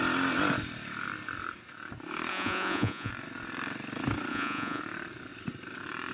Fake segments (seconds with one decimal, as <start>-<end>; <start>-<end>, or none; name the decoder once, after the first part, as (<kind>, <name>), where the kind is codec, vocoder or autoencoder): 2.3-3.1 (vocoder, Vocos); 4.3-4.8